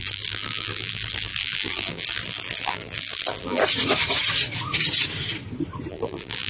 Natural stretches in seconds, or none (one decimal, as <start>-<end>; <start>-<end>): 3.6-5.9